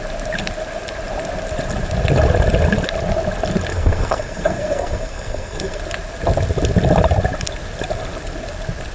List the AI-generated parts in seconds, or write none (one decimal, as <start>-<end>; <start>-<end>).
3.7-5.8